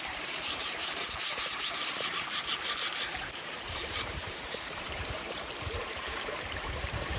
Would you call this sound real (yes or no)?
no